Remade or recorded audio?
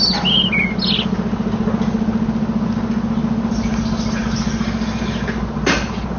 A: recorded